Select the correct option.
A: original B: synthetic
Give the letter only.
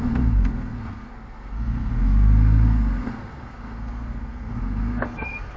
B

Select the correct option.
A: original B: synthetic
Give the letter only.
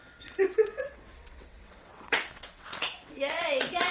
B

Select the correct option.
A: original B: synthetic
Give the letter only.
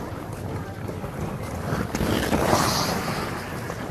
A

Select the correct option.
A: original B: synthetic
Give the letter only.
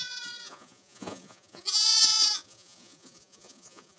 B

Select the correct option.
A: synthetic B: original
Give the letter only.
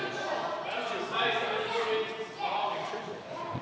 B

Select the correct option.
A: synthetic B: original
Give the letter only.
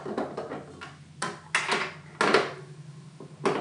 B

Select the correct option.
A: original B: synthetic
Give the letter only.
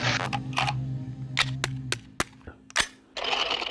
A